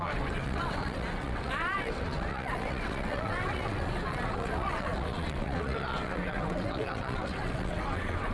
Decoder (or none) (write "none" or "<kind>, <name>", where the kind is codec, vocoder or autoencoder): vocoder, WaveNeXt